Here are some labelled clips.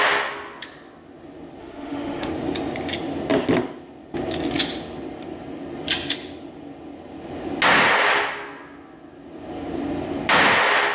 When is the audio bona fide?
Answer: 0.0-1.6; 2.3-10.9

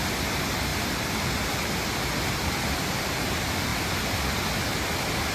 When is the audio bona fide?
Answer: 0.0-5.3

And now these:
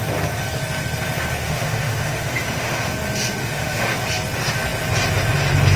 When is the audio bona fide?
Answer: 0.0-1.4; 2.9-3.4; 4.0-5.8

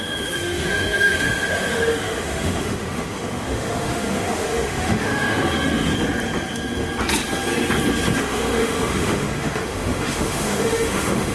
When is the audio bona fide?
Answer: 5.9-8.2